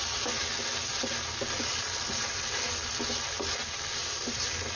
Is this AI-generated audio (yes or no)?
no